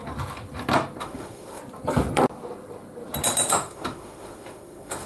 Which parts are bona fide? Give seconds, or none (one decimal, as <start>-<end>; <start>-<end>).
0.0-1.0; 1.6-3.5